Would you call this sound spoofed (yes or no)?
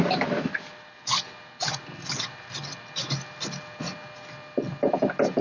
no